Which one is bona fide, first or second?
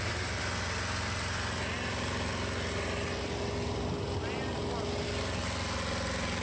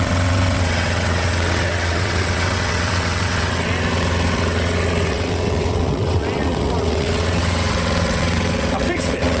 first